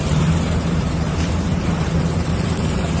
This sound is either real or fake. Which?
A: fake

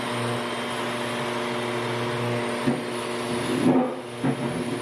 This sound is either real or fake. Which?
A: real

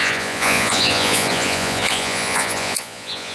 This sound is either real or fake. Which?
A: fake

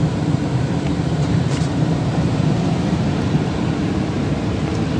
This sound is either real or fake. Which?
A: fake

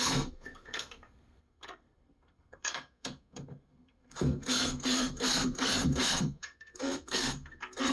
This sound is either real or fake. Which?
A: fake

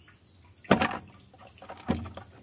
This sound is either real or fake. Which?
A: real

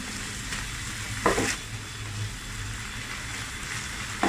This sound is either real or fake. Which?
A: real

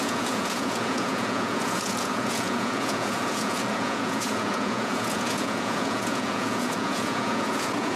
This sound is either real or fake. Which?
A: fake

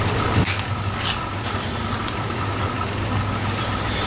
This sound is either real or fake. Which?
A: real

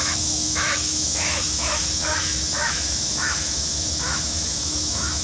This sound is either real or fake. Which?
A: fake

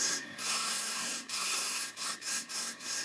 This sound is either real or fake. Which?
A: fake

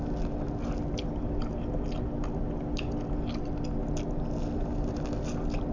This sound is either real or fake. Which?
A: real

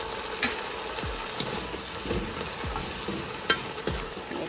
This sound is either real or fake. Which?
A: real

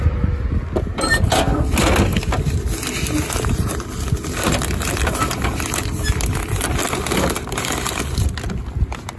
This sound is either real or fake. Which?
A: real